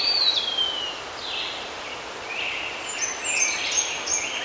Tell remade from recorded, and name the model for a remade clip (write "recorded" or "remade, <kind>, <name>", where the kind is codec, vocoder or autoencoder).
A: recorded